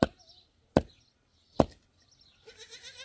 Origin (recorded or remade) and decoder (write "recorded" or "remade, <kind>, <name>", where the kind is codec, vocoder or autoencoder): recorded